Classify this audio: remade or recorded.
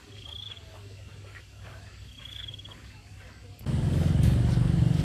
remade